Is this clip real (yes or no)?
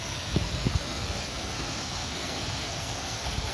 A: no